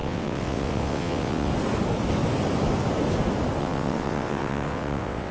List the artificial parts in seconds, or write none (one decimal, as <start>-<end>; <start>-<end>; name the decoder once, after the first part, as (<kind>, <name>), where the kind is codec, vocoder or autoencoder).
0.0-1.5 (vocoder, WaveNeXt); 3.6-5.3